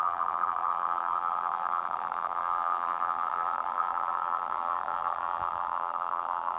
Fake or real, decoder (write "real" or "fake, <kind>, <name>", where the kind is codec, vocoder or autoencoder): fake, vocoder, BigVGAN v2